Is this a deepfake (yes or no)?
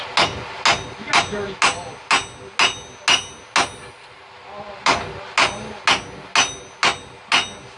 no